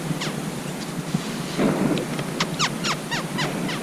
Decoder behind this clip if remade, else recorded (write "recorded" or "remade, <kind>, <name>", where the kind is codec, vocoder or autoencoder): recorded